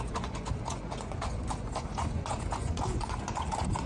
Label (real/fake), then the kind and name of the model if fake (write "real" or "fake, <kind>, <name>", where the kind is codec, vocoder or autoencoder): fake, vocoder, Vocos